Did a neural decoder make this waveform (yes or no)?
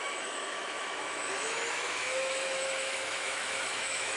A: yes